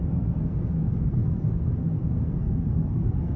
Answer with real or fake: fake